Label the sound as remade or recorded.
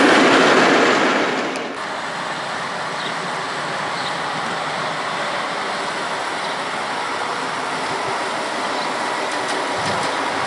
recorded